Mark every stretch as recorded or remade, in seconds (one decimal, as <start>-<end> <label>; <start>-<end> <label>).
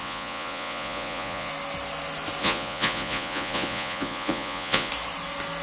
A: 0.0-1.5 remade; 1.5-2.4 recorded; 2.4-4.9 remade; 4.9-5.6 recorded